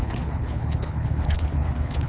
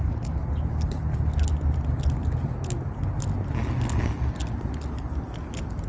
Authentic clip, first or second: second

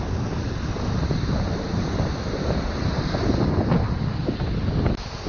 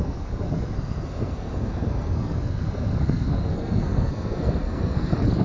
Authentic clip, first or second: first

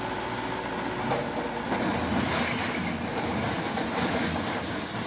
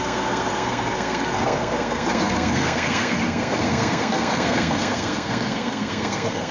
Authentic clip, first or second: first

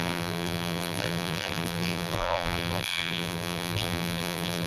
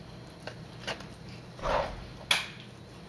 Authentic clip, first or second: second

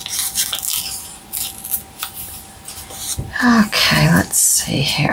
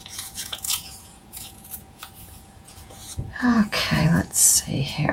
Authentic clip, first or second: first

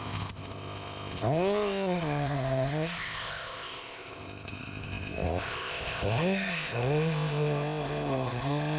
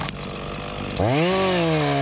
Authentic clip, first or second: second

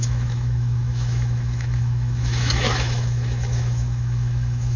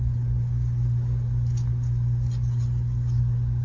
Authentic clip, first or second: second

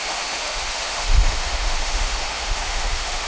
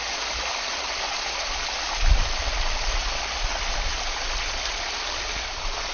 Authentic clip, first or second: second